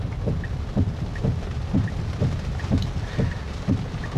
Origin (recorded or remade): recorded